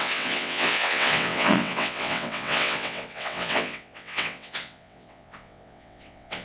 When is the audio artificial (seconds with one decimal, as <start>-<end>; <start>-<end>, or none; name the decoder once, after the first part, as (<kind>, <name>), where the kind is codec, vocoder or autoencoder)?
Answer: 0.0-6.4 (vocoder, WaveNeXt)